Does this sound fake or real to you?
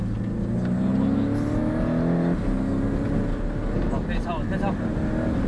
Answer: real